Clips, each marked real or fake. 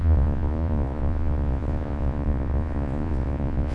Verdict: fake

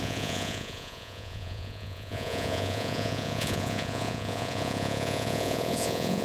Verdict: fake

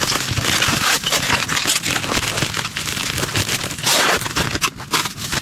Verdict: real